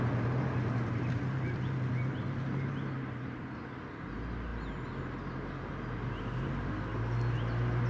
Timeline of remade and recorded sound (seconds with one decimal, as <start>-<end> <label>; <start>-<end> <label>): 0.0-7.9 recorded